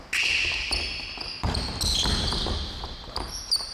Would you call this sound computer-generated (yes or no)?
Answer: no